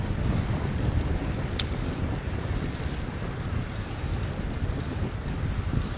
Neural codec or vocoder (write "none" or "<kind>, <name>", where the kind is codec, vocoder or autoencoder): none